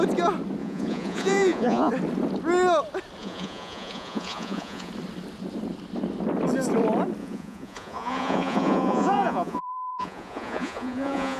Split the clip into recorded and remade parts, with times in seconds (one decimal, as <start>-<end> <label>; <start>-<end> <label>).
0.0-0.6 recorded; 0.6-1.9 remade; 1.9-3.2 recorded; 3.2-4.9 remade; 4.9-7.2 recorded; 7.2-11.4 remade